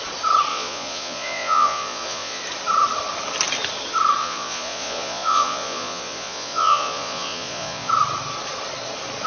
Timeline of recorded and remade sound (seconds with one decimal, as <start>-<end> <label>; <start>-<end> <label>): 0.0-0.5 recorded; 0.5-2.4 remade; 2.4-4.2 recorded; 4.2-7.9 remade; 7.9-9.3 recorded